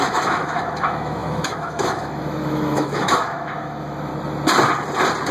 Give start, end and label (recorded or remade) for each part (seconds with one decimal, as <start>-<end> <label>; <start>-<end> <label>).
0.0-4.1 remade; 4.1-5.3 recorded